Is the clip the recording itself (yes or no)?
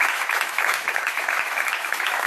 no